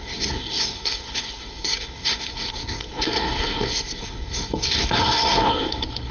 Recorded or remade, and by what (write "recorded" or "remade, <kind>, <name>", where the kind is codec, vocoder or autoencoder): remade, codec, SNAC